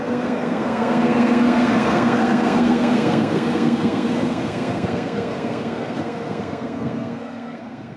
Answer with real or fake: fake